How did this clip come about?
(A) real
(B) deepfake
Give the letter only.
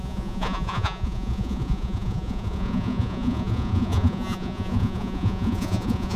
B